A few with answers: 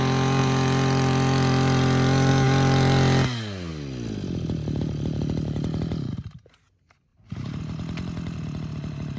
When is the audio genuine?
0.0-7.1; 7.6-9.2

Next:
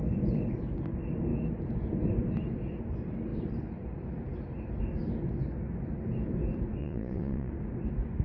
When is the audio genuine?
0.0-6.8; 7.5-8.2